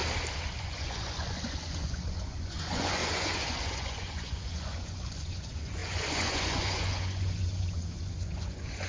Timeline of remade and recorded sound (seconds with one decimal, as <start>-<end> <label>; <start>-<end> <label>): 0.0-0.6 recorded; 0.6-8.9 remade